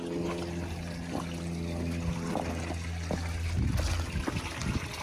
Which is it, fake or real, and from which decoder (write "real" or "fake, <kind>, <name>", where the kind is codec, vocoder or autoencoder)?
real